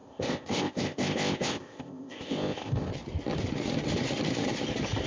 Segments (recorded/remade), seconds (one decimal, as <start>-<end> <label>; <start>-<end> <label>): 0.0-2.9 remade; 2.9-5.1 recorded